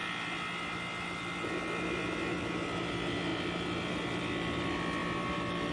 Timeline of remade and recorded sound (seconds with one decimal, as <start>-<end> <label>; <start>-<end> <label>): 0.0-5.7 recorded